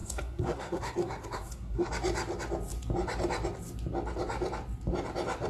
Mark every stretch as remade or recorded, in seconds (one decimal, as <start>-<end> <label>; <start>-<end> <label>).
0.0-1.9 remade; 1.9-5.5 recorded